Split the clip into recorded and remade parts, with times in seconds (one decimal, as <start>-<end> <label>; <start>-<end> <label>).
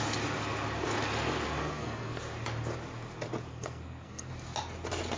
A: 0.0-1.6 recorded; 1.6-2.2 remade; 2.2-3.5 recorded; 3.5-4.3 remade; 4.3-5.2 recorded